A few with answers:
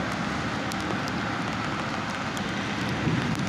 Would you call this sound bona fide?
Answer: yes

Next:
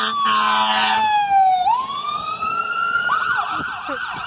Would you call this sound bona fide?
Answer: yes